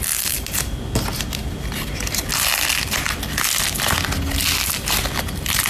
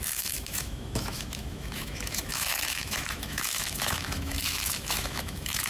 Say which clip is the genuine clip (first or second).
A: first